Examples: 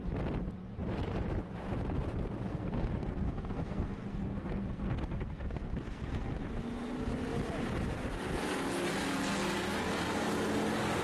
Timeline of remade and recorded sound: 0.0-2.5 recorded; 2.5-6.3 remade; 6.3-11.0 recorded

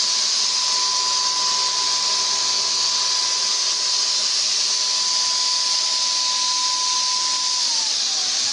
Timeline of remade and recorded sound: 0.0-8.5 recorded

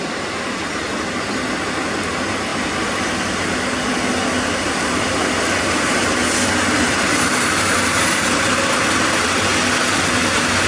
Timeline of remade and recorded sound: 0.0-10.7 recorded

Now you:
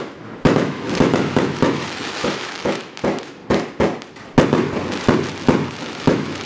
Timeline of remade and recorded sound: 0.0-3.4 remade; 3.4-5.7 recorded; 5.7-6.5 remade